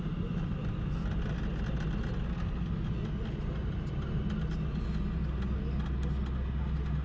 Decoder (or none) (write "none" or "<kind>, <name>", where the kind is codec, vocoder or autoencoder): none